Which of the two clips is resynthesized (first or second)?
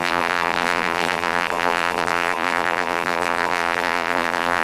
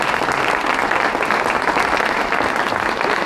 first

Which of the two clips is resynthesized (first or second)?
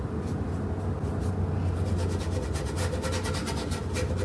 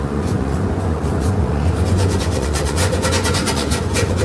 second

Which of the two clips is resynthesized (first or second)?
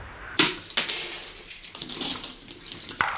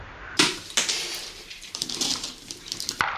second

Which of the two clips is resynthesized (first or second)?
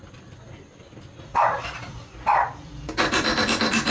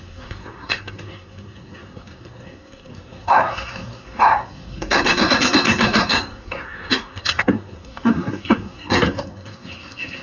second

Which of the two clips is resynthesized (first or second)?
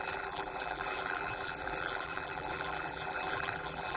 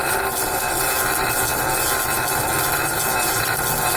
first